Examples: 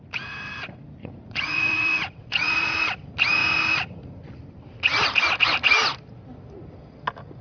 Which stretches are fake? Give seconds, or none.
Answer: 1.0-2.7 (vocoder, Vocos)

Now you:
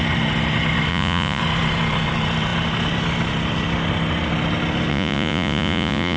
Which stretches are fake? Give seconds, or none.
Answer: 0.9-1.4 (vocoder, Vocos); 4.9-6.2

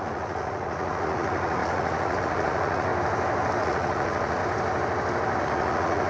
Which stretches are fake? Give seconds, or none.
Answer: 0.0-2.9 (vocoder, Vocos); 3.6-4.4; 5.4-6.1

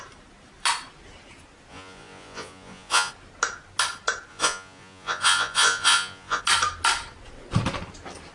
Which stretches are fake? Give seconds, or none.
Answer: 1.7-3.1 (vocoder, Vocos); 4.3-6.4